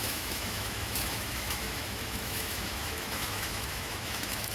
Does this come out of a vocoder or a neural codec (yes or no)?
yes